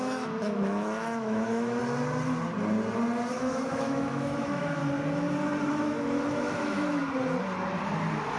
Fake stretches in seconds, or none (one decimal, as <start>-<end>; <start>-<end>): 0.0-1.8; 3.3-4.8; 5.7-7.0